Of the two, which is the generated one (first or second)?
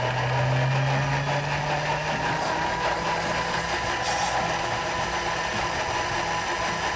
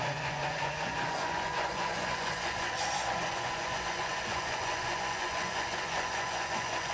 second